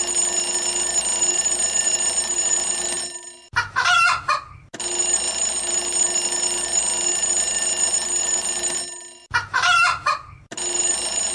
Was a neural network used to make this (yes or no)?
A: no